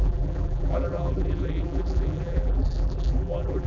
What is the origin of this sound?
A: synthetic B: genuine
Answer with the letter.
A